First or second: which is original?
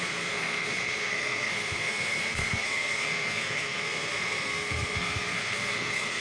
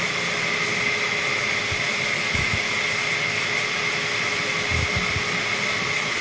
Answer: second